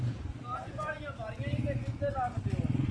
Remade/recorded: recorded